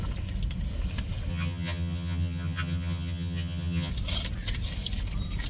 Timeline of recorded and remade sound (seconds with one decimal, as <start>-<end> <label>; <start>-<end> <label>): 0.0-1.3 recorded; 1.3-3.9 remade; 3.9-5.5 recorded